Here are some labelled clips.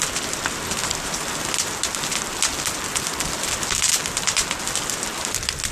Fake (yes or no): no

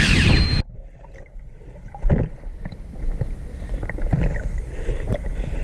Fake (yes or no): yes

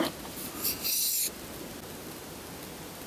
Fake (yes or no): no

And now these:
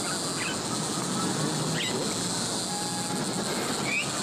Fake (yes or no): no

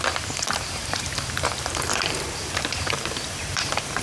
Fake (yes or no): yes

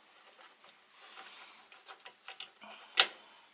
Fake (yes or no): no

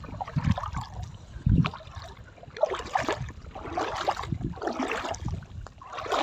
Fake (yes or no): no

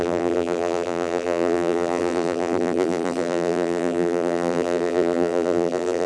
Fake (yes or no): yes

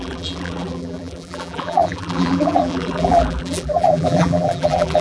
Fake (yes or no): yes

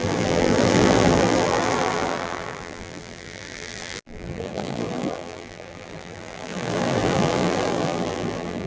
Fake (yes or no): yes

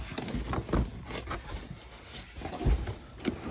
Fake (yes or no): no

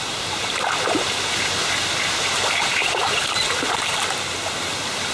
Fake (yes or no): no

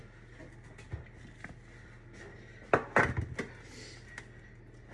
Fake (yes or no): no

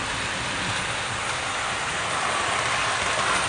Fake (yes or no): no